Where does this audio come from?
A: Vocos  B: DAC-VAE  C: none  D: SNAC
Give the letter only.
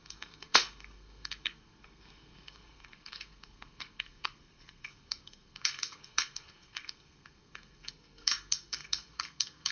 D